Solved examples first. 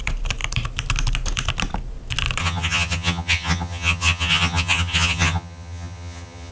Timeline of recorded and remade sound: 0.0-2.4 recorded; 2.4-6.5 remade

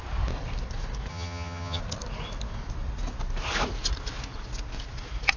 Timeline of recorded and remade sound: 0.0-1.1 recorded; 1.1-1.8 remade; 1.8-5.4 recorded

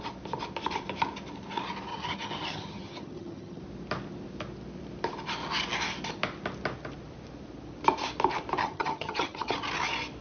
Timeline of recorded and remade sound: 0.0-1.9 recorded; 1.9-3.6 remade; 3.6-8.6 recorded; 8.6-9.5 remade; 9.5-10.2 recorded